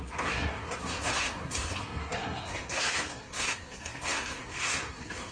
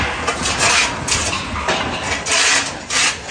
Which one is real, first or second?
second